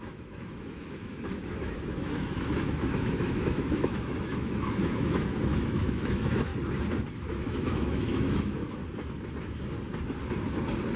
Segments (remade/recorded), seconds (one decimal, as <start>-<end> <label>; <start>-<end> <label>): 0.0-6.5 remade; 6.5-7.1 recorded; 7.1-8.8 remade; 8.8-11.0 recorded